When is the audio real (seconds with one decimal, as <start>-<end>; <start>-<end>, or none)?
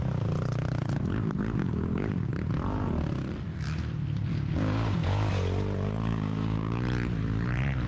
0.0-1.6; 2.3-4.3; 5.3-6.1; 6.7-7.9